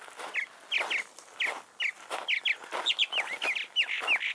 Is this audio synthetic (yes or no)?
no